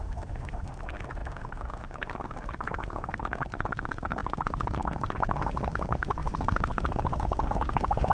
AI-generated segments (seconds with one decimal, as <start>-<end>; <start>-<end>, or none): 0.0-8.1